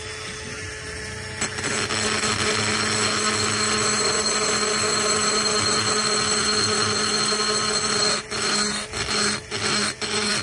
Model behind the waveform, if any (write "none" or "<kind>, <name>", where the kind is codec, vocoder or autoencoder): none